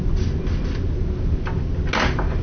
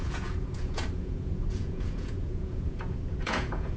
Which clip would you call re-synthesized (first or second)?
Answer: second